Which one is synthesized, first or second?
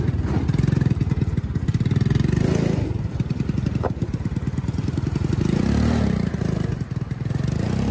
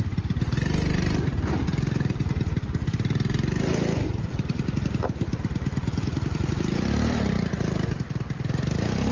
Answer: second